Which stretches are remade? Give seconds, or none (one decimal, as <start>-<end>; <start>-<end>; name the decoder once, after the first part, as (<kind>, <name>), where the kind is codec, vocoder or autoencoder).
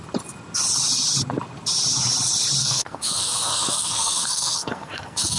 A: 2.6-5.4 (codec, SNAC)